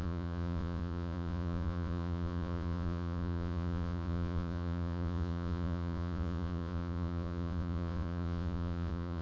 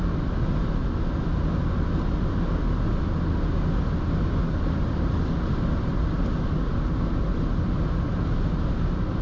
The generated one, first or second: first